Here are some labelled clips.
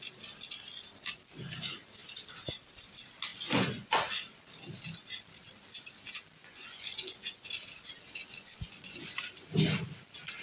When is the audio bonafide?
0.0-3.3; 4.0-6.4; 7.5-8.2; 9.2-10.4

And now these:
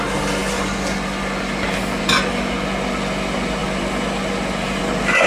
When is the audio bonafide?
0.0-5.3

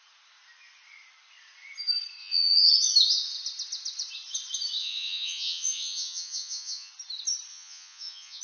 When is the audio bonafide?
0.0-2.2; 2.7-4.8; 6.9-7.5

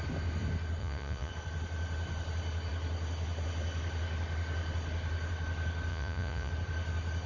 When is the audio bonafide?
0.0-0.8; 1.3-5.9; 6.5-7.3

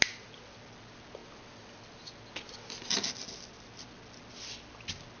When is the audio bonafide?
0.0-5.2

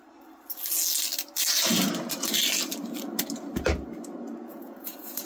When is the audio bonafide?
0.0-4.5

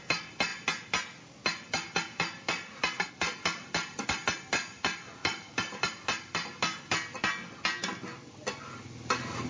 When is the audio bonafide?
0.0-9.5

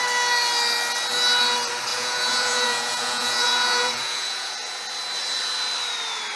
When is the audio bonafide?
0.0-1.9; 4.5-6.4